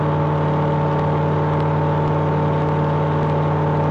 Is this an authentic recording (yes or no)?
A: yes